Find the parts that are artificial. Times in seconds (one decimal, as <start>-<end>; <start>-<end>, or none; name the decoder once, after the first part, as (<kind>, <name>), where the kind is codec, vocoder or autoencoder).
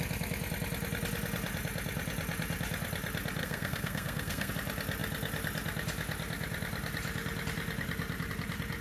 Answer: 3.4-4.5 (codec, SNAC)